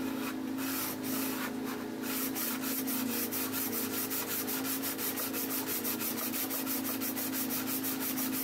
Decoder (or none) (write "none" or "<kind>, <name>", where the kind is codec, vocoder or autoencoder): vocoder, BigVGAN v2